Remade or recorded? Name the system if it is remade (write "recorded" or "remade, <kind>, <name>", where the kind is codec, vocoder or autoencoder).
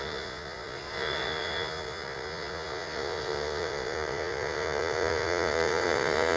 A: remade, vocoder, Vocos